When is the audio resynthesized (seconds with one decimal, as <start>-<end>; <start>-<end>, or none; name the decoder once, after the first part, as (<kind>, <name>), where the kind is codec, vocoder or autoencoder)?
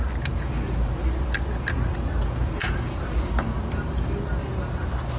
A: none